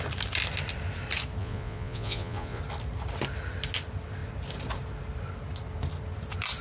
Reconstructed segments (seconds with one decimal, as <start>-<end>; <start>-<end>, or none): 1.4-2.6